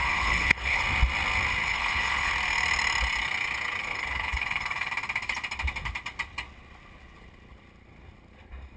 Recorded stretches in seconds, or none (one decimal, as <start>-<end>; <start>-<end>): 0.8-1.6; 2.3-3.8; 4.9-8.8